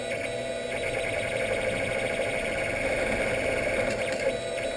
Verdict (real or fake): real